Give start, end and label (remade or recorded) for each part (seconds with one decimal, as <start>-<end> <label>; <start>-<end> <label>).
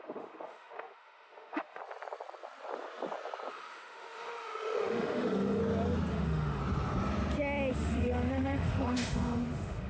0.0-1.8 remade; 1.8-3.5 recorded; 3.5-5.6 remade; 5.6-6.1 recorded; 6.1-6.6 remade; 6.6-7.7 recorded; 7.7-9.9 remade